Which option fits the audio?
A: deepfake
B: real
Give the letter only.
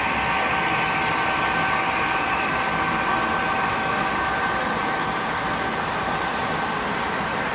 B